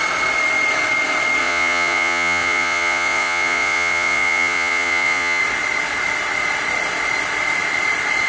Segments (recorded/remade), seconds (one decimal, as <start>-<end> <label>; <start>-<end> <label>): 0.0-1.4 recorded; 1.4-5.4 remade; 5.4-8.3 recorded